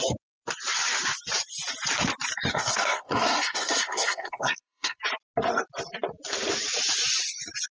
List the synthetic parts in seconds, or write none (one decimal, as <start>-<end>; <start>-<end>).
2.5-5.0